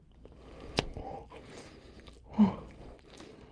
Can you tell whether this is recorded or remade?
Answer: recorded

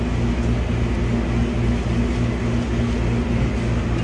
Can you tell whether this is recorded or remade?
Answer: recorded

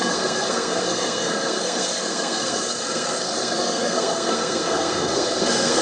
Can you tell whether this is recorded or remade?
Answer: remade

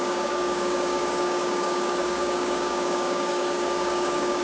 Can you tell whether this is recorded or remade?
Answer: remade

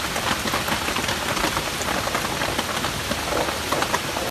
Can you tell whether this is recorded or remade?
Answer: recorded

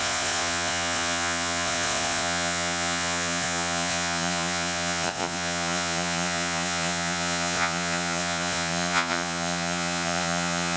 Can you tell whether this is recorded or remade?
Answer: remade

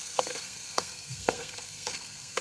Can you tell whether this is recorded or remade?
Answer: remade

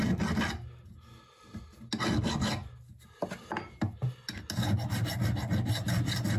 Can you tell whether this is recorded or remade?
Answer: recorded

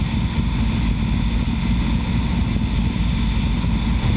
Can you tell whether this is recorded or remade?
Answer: recorded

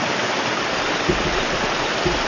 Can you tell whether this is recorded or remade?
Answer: recorded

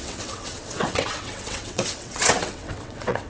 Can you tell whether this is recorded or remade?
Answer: remade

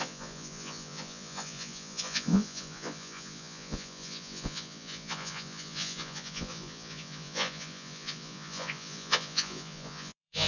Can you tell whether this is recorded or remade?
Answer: remade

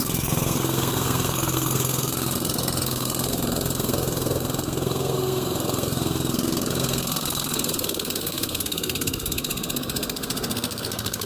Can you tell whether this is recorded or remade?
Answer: remade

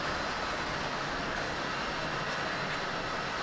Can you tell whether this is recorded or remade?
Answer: recorded